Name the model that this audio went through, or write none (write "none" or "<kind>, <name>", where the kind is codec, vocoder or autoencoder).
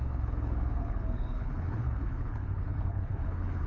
codec, HILCodec